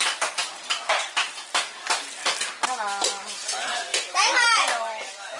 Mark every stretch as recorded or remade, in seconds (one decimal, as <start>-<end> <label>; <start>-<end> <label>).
0.0-5.4 recorded